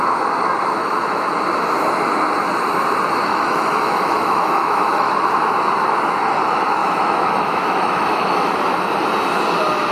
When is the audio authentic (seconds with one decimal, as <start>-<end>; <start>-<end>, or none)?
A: 0.0-0.8; 1.4-3.3; 5.1-6.8; 8.5-9.9